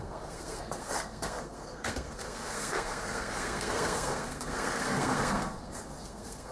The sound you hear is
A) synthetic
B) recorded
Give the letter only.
A